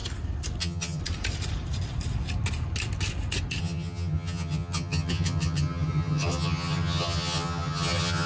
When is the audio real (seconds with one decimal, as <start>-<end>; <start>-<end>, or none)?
0.0-0.6; 1.0-3.6